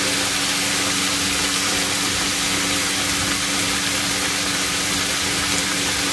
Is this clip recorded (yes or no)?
yes